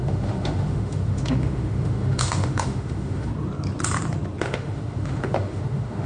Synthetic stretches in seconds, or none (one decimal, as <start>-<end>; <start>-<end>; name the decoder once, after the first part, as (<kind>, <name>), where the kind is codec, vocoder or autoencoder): 0.0-3.3 (autoencoder, DAC-VAE); 4.4-6.1